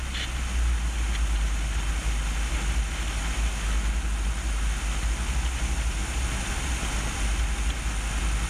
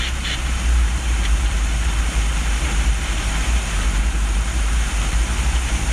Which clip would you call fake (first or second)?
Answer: second